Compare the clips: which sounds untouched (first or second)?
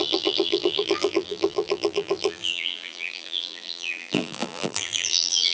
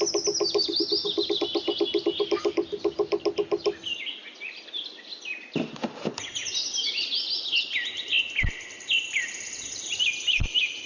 second